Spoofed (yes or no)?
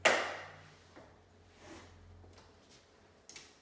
no